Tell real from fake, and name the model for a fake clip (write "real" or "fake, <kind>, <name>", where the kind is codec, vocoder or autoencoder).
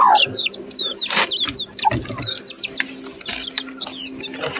real